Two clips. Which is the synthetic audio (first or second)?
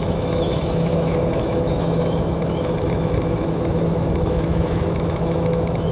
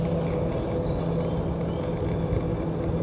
first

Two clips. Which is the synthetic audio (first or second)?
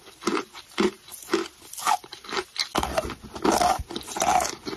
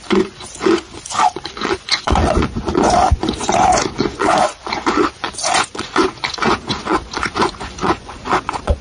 second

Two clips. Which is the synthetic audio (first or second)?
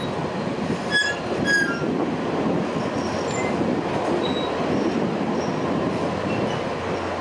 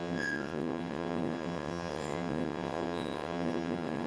second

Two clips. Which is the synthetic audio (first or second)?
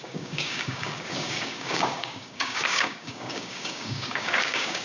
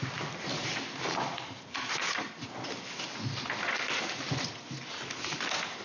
first